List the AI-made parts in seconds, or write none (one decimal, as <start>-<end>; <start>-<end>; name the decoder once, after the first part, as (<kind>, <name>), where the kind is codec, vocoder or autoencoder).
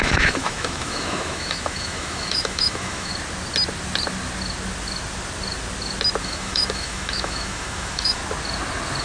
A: 0.0-3.1 (autoencoder, DAC-VAE); 6.2-8.2